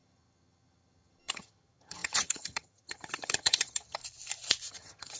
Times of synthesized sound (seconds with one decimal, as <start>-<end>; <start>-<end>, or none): 0.0-4.0; 4.7-5.2